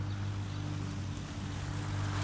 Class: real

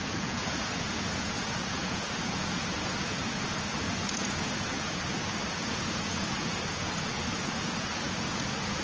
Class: fake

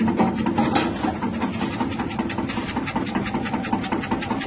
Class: real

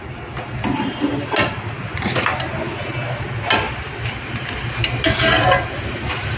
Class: real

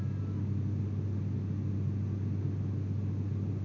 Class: real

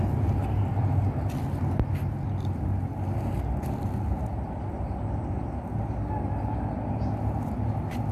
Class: real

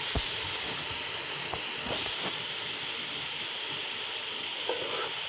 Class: real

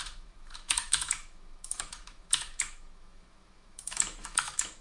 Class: fake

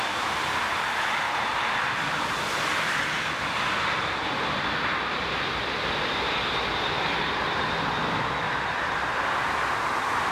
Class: real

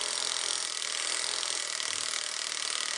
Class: real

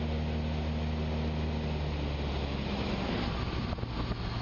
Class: real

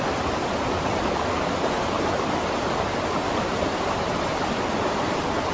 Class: real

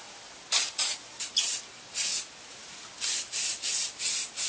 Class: real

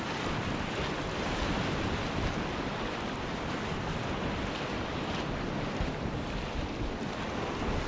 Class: real